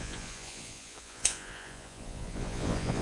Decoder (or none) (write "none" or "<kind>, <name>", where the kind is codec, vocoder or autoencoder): vocoder, Vocos